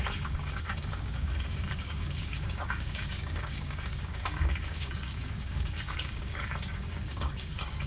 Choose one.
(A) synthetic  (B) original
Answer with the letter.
A